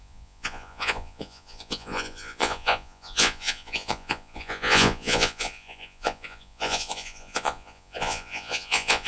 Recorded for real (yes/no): no